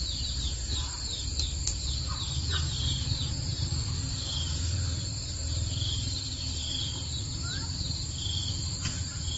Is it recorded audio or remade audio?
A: remade